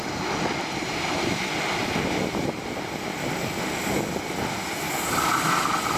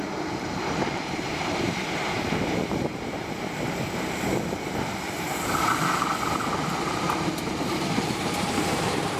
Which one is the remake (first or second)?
second